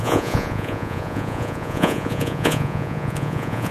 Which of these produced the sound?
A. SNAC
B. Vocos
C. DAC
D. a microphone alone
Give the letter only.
B